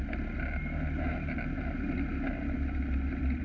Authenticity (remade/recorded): recorded